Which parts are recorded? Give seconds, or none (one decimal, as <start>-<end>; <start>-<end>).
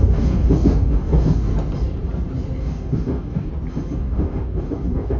1.5-2.6; 3.5-4.0